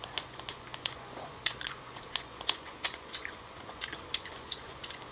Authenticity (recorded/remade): remade